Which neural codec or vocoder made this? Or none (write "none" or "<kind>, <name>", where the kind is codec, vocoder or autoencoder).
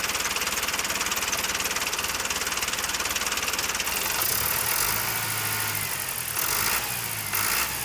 none